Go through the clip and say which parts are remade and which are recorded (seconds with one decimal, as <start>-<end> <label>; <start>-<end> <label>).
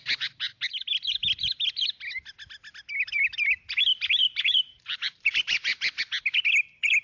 0.0-4.2 recorded; 4.2-6.0 remade; 6.0-7.0 recorded